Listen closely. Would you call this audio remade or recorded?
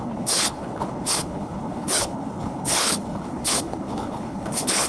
remade